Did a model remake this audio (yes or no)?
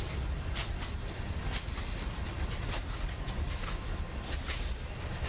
yes